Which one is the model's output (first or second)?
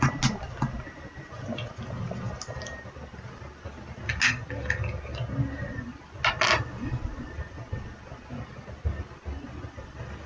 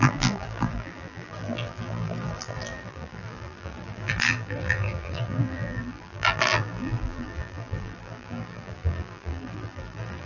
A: second